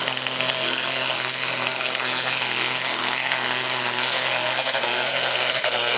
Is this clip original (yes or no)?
no